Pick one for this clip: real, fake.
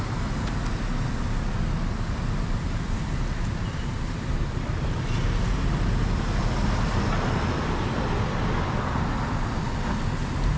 real